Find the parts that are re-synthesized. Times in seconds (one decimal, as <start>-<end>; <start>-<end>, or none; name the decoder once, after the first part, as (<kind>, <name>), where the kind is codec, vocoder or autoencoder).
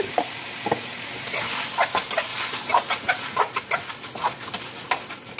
2.3-3.4 (vocoder, BigVGAN v2)